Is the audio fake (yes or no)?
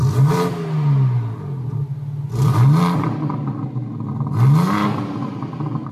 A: no